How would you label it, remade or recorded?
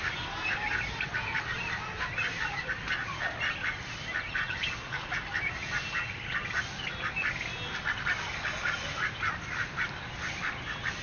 recorded